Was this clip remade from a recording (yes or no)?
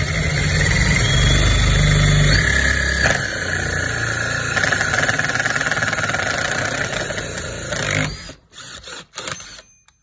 no